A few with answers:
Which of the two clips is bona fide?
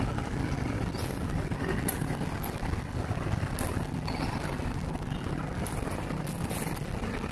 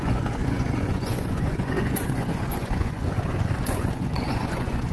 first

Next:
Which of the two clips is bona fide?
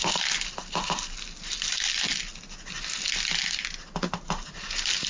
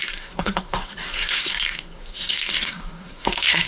first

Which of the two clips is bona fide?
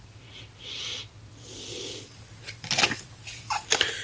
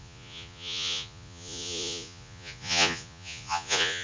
first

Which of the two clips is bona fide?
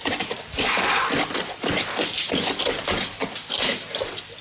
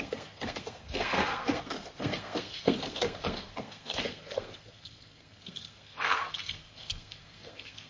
first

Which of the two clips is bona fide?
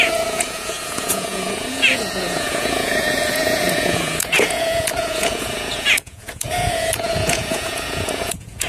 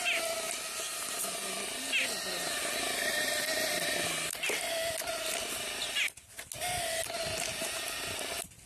second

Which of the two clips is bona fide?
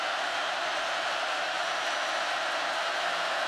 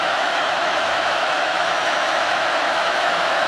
first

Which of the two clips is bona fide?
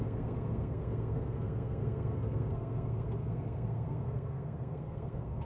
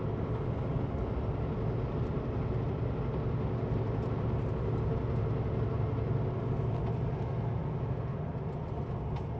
second